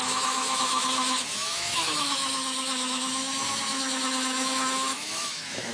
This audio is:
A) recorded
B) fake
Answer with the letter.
B